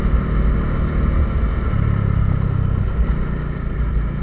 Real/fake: real